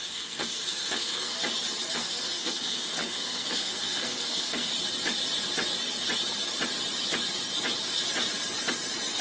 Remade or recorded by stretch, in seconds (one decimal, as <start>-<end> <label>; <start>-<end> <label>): 0.0-1.4 remade; 1.4-1.9 recorded; 1.9-4.7 remade; 4.7-9.2 recorded